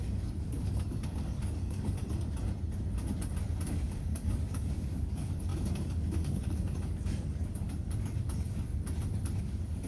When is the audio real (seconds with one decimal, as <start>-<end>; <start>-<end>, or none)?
2.0-3.7; 8.7-9.4